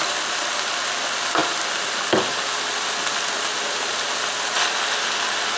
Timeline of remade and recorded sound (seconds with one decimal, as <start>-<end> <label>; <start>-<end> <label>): 0.0-5.6 recorded